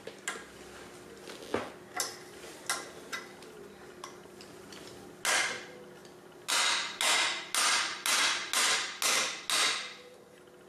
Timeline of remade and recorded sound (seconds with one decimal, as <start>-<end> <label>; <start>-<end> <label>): 0.0-10.7 recorded